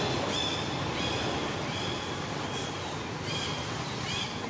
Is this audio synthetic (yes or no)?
no